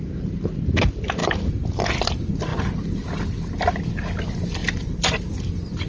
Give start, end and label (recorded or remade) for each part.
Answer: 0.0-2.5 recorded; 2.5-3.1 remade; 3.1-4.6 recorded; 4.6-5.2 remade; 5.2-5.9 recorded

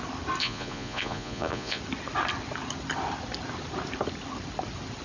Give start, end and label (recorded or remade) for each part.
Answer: 0.0-0.4 recorded; 0.4-1.8 remade; 1.8-5.0 recorded

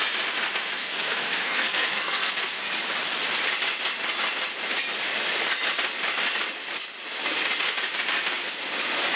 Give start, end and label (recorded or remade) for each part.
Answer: 0.0-0.8 recorded; 0.8-2.3 remade; 2.3-9.2 recorded

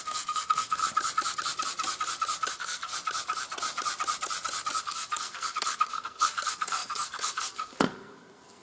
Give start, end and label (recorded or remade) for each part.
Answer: 0.0-0.8 remade; 0.8-2.5 recorded; 2.5-2.9 remade; 2.9-4.8 recorded; 4.8-8.6 remade